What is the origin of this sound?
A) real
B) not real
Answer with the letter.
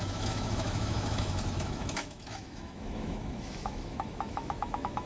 B